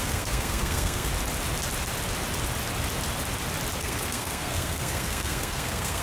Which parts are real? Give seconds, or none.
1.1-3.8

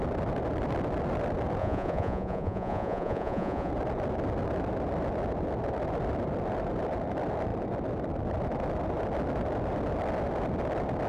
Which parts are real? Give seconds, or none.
0.0-1.6; 3.7-11.1